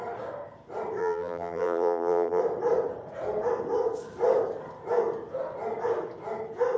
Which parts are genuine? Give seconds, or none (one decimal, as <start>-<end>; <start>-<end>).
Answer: 0.0-1.0; 2.4-6.8